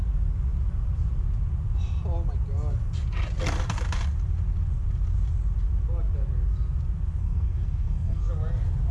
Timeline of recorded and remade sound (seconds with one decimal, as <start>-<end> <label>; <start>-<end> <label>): 0.0-7.2 recorded; 7.2-8.3 remade; 8.3-8.9 recorded